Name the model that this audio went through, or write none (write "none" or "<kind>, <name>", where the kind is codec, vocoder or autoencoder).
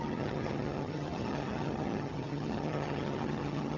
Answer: vocoder, HiFi-GAN